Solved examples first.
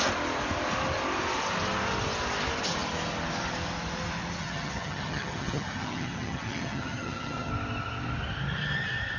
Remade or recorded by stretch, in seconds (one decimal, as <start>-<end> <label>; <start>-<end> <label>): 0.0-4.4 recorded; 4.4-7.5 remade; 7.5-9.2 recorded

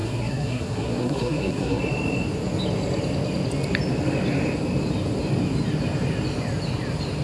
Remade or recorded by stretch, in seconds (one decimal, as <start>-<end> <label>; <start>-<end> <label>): 0.0-1.8 remade; 1.8-7.2 recorded

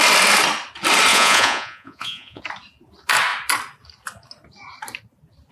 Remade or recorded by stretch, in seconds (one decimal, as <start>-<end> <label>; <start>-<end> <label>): 0.0-1.1 recorded; 1.1-2.4 remade; 2.4-5.5 recorded